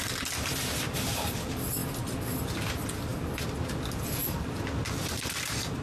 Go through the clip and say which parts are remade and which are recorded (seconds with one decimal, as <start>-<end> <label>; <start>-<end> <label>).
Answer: 0.0-1.8 recorded; 1.8-2.4 remade; 2.4-4.2 recorded; 4.2-5.2 remade; 5.2-5.8 recorded